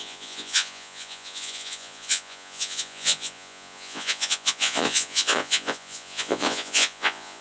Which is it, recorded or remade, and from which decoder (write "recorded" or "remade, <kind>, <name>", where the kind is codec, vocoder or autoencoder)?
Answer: remade, vocoder, Vocos